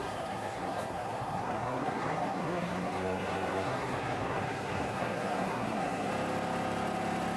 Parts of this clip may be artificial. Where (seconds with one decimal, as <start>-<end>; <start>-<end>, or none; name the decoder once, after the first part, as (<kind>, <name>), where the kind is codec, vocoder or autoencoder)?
0.0-6.1 (codec, SNAC)